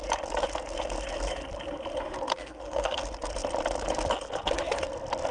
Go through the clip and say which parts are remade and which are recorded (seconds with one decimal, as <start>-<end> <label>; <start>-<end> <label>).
0.0-2.3 recorded; 2.3-3.0 remade; 3.0-5.3 recorded